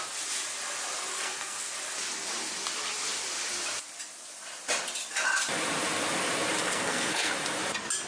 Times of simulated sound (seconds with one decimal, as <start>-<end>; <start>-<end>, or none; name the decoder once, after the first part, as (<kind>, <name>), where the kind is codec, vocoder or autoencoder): 1.1-1.7 (codec, SNAC); 6.6-7.3